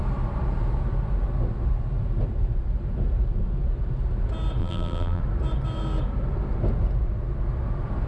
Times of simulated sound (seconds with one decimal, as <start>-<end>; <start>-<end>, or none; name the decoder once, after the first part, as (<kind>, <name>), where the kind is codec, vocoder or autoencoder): 4.6-5.2 (vocoder, BigVGAN v2)